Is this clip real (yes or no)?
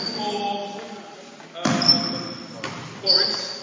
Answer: yes